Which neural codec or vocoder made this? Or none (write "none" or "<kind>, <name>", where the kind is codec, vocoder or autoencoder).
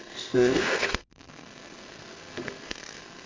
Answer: codec, SNAC